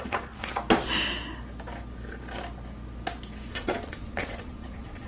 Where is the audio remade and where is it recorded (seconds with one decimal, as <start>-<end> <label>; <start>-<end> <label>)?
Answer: 0.0-0.5 remade; 0.5-3.5 recorded; 3.5-5.1 remade

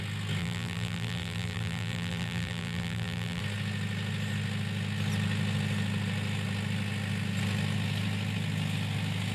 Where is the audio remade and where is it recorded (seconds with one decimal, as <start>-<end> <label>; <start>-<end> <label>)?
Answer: 0.0-0.4 recorded; 0.4-3.4 remade; 3.4-9.3 recorded

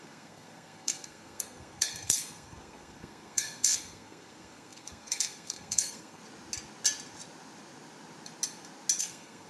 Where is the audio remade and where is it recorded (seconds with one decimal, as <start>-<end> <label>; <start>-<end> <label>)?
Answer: 0.0-6.2 remade; 6.2-9.0 recorded; 9.0-9.5 remade

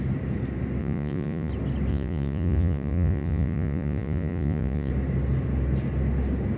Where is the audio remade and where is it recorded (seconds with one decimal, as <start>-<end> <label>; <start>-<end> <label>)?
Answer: 0.0-0.8 recorded; 0.8-1.5 remade; 1.5-1.9 recorded; 1.9-4.9 remade; 4.9-6.6 recorded